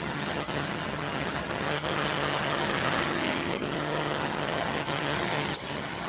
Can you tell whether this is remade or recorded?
remade